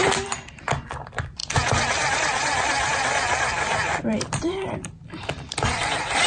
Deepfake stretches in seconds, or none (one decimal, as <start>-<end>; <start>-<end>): 0.0-6.3